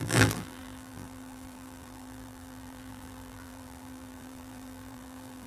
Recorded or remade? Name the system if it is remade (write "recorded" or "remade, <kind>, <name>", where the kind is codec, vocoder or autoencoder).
remade, vocoder, BigVGAN v2